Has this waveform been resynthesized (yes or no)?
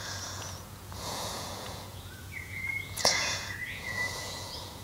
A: yes